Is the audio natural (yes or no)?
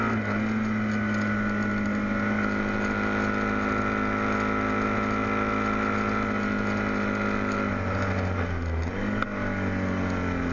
yes